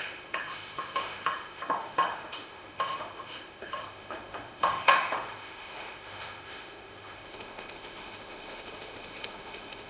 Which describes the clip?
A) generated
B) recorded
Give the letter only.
A